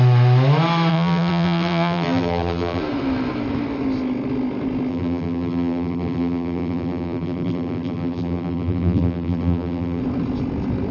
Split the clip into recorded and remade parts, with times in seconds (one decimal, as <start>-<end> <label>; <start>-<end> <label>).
0.0-0.9 recorded; 0.9-2.8 remade; 2.8-4.9 recorded; 4.9-10.0 remade; 10.0-10.9 recorded